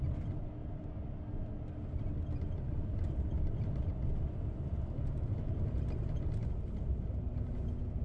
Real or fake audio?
real